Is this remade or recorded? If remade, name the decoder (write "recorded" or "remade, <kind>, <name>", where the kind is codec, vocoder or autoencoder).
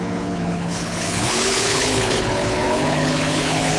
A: remade, codec, HILCodec